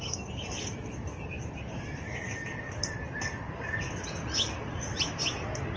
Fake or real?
real